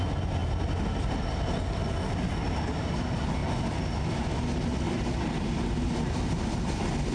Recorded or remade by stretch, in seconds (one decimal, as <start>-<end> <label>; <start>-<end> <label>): 0.0-7.1 recorded